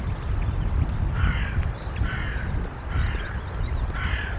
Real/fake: real